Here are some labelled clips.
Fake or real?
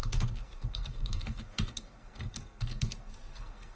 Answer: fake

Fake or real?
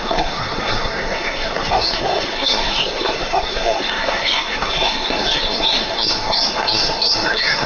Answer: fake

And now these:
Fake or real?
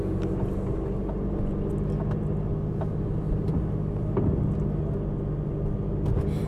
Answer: real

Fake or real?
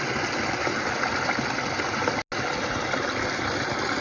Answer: real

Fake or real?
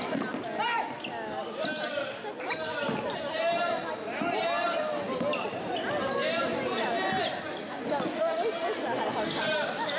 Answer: real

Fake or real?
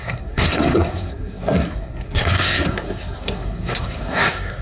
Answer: fake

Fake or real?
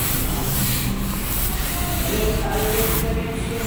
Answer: real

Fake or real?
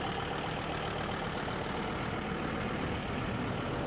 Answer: real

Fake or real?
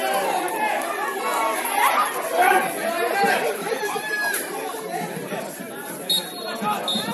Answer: real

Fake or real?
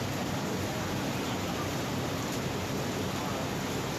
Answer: real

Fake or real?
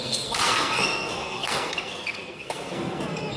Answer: fake